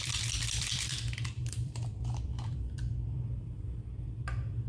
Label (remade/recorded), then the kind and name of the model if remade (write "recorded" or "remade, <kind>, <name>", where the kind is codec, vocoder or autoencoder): remade, vocoder, BigVGAN v2